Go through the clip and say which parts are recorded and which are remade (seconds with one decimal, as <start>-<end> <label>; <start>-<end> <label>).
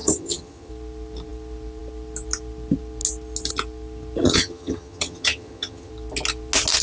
0.0-0.7 remade; 0.7-4.2 recorded; 4.2-5.9 remade; 5.9-6.8 recorded